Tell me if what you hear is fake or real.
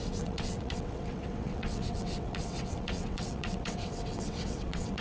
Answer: fake